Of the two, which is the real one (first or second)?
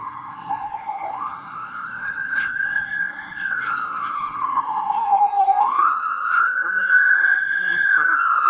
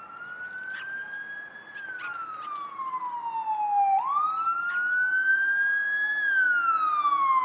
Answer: second